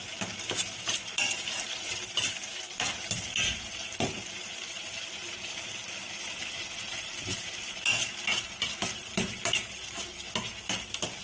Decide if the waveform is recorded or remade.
recorded